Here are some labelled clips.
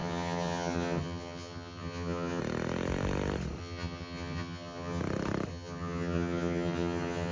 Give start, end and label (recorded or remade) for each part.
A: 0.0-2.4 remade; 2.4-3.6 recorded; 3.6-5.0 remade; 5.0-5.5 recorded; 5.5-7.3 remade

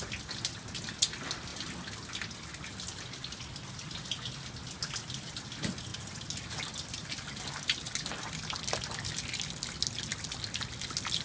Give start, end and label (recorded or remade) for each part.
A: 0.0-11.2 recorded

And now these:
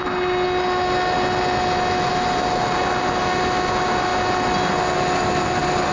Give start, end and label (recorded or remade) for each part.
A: 0.0-5.9 recorded

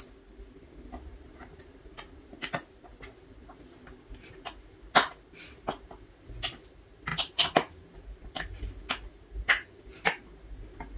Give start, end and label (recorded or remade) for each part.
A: 0.0-11.0 recorded

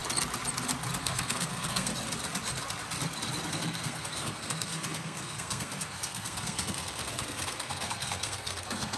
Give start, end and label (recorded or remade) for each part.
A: 0.0-1.0 recorded; 1.0-1.9 remade; 1.9-3.5 recorded; 3.5-9.0 remade